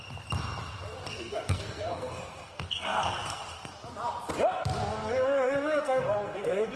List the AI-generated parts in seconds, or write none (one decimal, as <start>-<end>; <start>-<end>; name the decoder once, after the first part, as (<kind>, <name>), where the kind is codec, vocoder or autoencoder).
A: 1.1-3.7 (codec, SNAC); 4.9-6.8